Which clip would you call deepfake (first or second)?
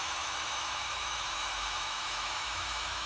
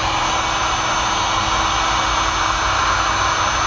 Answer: first